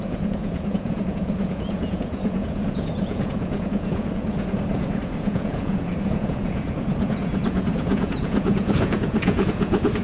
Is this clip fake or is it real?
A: fake